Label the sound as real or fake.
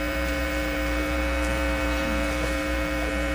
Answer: fake